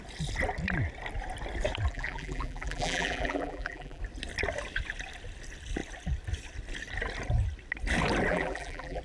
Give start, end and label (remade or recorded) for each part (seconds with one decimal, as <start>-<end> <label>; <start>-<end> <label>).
0.0-1.9 recorded; 1.9-4.0 remade; 4.0-8.3 recorded; 8.3-9.0 remade